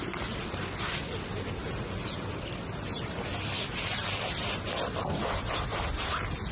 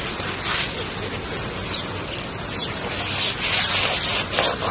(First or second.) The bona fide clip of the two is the second